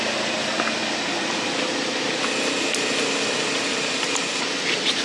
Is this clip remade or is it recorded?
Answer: recorded